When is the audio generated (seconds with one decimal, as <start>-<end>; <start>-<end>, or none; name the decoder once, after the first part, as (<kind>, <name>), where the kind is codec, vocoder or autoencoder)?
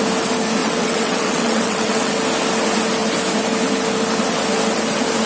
0.6-2.1 (vocoder, WaveNeXt)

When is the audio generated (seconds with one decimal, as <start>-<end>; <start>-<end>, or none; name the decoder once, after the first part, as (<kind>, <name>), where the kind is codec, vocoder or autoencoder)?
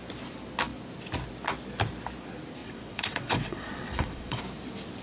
2.6-4.4 (vocoder, WaveNeXt)